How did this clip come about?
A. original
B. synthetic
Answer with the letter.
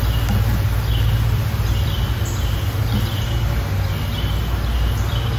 A